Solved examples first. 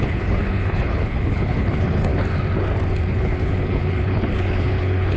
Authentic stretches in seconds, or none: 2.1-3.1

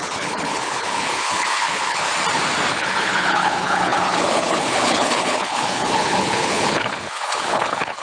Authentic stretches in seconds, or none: 2.1-2.7

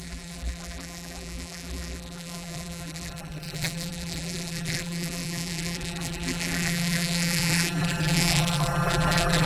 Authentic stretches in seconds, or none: none

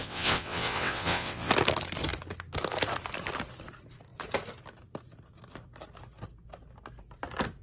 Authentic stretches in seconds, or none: 1.5-7.6

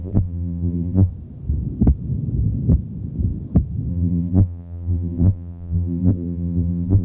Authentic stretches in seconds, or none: 1.1-3.9

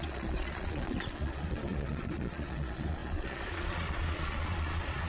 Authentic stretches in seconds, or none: none

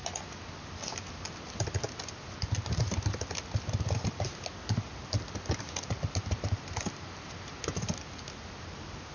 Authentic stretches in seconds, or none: 0.0-9.1